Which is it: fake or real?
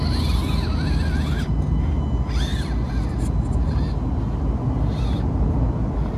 real